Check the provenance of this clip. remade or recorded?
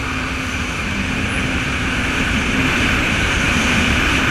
remade